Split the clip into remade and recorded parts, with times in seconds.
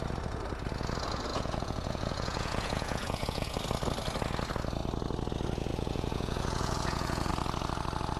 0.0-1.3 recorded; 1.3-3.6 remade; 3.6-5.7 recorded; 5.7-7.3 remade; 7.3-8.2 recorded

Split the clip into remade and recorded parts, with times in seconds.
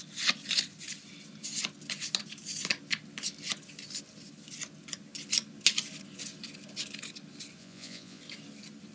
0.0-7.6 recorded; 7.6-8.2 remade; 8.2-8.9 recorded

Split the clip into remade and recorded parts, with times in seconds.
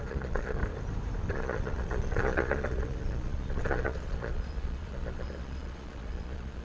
0.0-0.6 remade; 0.6-1.2 recorded; 1.2-6.6 remade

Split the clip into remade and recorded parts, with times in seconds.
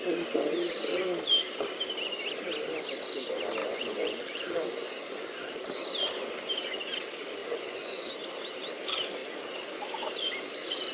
0.0-3.6 recorded; 3.6-5.5 remade; 5.5-7.4 recorded; 7.4-8.1 remade; 8.1-10.9 recorded